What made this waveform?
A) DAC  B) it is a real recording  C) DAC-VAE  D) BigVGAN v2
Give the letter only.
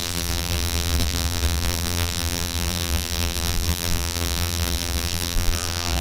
D